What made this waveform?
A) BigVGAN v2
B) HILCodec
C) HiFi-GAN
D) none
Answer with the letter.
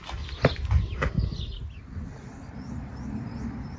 D